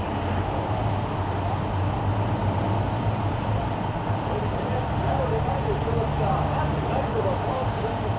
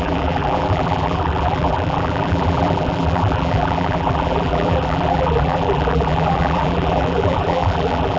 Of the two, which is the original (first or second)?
first